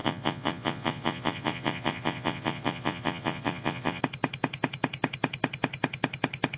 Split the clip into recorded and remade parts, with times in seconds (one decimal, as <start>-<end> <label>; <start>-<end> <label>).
0.0-4.0 remade; 4.0-6.6 recorded